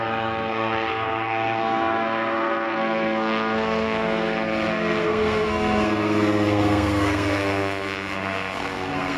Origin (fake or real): fake